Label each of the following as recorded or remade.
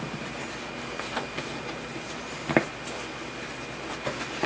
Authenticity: recorded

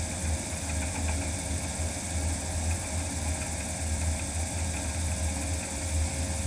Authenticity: recorded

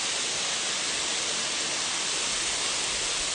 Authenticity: recorded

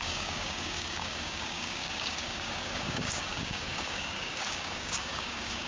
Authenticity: remade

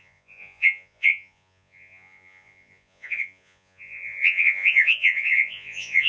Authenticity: remade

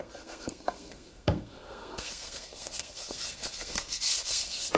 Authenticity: remade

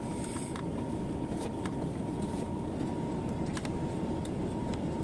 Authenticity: remade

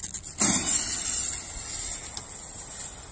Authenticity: recorded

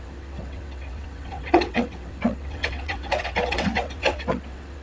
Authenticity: remade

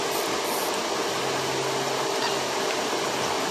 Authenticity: recorded